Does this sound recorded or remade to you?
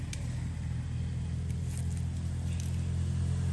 recorded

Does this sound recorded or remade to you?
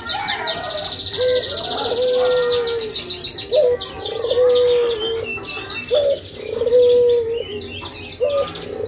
recorded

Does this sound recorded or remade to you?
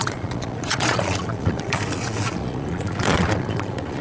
remade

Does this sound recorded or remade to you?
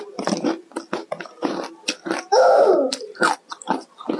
recorded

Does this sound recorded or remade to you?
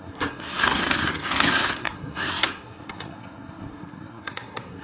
remade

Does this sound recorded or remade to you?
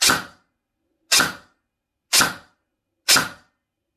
recorded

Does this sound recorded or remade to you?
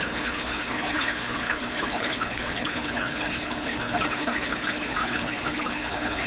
remade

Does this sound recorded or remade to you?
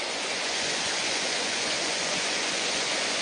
remade